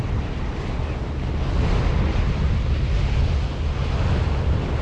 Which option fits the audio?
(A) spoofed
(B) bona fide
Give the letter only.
B